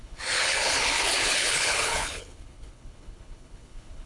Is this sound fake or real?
fake